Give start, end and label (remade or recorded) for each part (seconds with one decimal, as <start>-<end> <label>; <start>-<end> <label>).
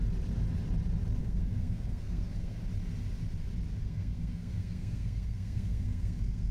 0.0-1.2 recorded; 1.2-2.6 remade; 2.6-3.8 recorded; 3.8-6.5 remade